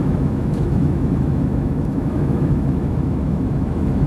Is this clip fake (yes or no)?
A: yes